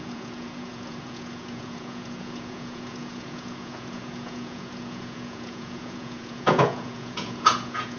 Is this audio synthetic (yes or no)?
yes